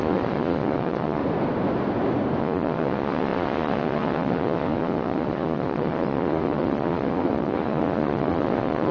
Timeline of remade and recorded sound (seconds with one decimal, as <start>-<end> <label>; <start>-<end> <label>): 0.0-1.2 remade; 1.2-2.4 recorded; 2.4-8.9 remade